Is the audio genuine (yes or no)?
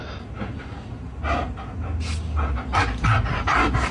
yes